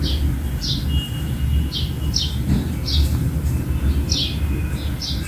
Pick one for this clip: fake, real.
real